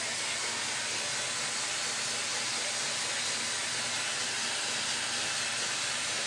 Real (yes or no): yes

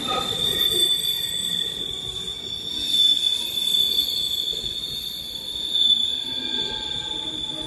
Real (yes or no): yes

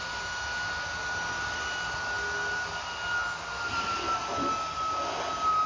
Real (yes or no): yes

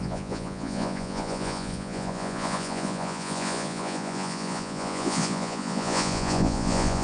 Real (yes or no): no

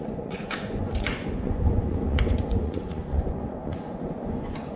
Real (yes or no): no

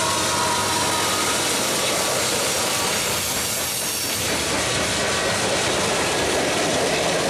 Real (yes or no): yes